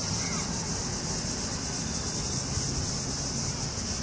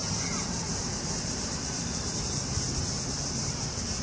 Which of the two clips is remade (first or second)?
second